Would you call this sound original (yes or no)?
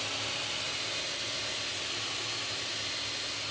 yes